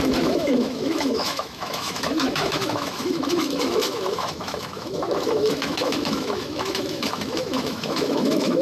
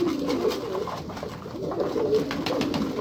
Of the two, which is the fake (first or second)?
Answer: first